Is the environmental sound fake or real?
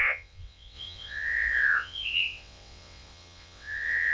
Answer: fake